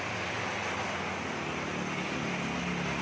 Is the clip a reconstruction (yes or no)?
no